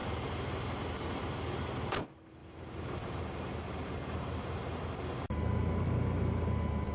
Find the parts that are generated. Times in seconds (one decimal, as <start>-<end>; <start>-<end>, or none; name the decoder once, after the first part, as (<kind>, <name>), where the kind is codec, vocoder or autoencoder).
0.0-1.2 (vocoder, BigVGAN v2); 2.4-4.8